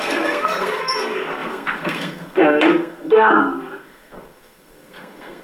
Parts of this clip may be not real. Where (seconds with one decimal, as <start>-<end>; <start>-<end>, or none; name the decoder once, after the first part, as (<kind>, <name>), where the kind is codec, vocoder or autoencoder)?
0.0-5.4 (codec, SNAC)